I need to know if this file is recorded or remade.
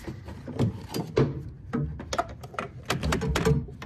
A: recorded